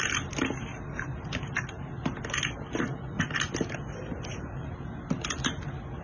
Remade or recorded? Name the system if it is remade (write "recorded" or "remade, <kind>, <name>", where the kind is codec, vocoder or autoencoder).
remade, vocoder, BigVGAN v2